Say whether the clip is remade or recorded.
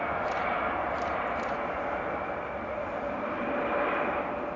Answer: recorded